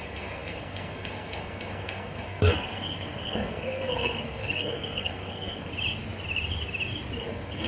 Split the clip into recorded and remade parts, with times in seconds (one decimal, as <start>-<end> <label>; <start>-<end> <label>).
0.0-5.7 remade; 5.7-7.2 recorded; 7.2-7.7 remade

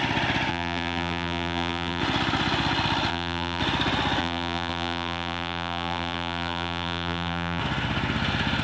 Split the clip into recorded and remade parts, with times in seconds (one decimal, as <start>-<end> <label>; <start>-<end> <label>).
0.0-0.5 recorded; 0.5-2.0 remade; 2.0-3.1 recorded; 3.1-3.6 remade; 3.6-4.2 recorded; 4.2-7.6 remade; 7.6-8.6 recorded

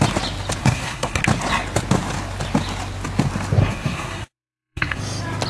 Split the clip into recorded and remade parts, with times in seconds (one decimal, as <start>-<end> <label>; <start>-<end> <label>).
0.0-0.6 recorded; 0.6-1.2 remade; 1.2-3.6 recorded; 3.6-5.0 remade; 5.0-5.5 recorded

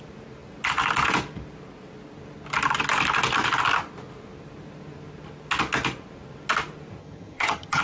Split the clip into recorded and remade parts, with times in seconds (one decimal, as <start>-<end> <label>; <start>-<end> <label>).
0.0-7.0 recorded; 7.0-7.8 remade